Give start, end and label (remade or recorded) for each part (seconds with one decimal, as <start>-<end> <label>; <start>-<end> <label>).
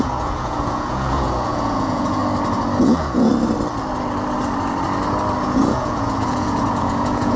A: 0.0-2.2 remade; 2.2-2.8 recorded; 2.8-3.3 remade; 3.3-5.4 recorded; 5.4-7.4 remade